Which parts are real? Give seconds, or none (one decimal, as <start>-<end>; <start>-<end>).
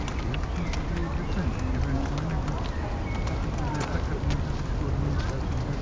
0.0-5.8